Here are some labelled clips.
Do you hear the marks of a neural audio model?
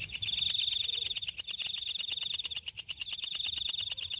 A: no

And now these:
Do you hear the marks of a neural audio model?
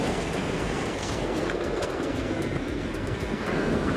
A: yes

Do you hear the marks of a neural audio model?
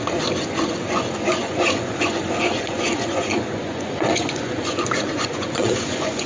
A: yes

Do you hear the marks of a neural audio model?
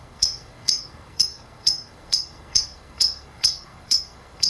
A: yes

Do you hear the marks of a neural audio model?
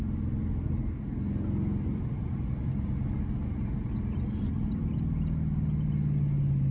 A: no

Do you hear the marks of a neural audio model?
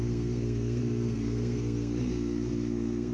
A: yes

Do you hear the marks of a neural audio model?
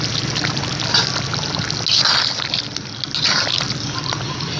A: no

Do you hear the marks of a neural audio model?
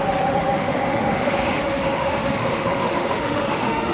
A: yes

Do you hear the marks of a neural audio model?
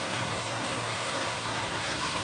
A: yes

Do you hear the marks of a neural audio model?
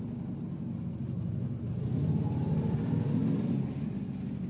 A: no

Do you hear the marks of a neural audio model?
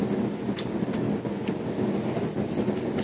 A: no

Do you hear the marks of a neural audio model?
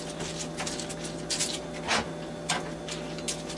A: no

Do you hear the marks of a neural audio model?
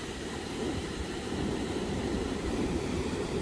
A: yes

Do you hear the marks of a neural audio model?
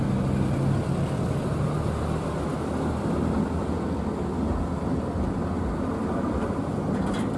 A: no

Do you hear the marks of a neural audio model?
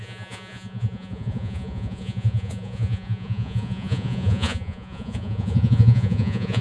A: yes